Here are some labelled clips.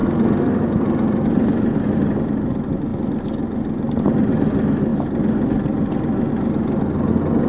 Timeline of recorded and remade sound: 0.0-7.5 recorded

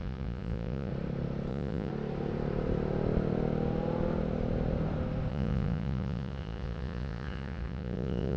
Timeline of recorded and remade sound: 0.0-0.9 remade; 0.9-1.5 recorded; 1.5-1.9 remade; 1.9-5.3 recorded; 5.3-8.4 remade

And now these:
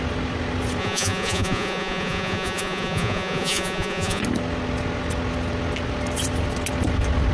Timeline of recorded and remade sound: 0.0-0.8 recorded; 0.8-4.2 remade; 4.2-7.3 recorded

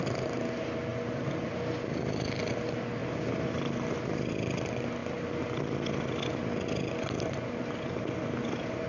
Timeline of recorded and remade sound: 0.0-8.9 recorded